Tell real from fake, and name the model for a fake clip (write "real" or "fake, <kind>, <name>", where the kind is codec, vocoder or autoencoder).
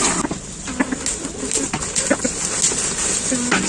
real